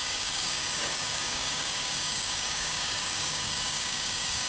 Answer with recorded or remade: remade